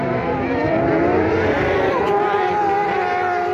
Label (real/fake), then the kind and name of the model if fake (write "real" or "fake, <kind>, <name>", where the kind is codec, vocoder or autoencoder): fake, vocoder, BigVGAN v2